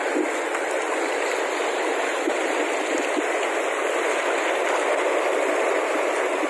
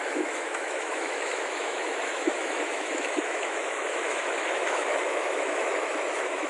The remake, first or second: second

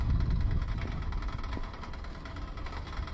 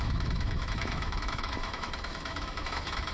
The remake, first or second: second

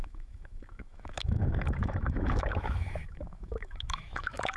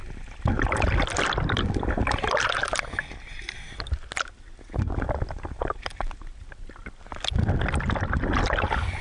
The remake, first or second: first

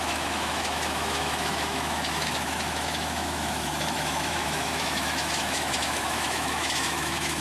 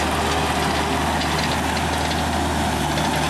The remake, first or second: first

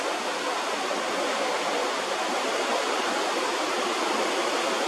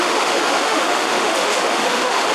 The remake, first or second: second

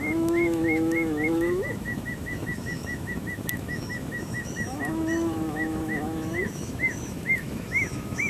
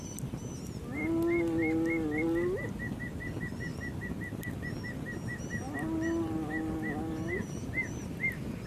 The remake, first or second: first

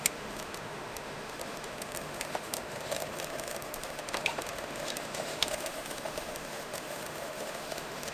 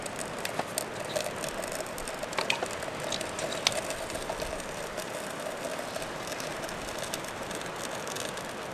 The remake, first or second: first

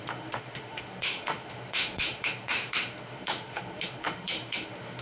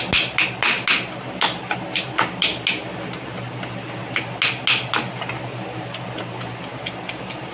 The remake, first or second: first